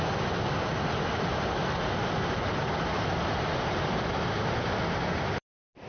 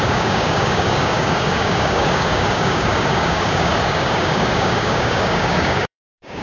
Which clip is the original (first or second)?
first